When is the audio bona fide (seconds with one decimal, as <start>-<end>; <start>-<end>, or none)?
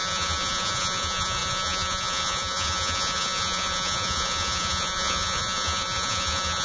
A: none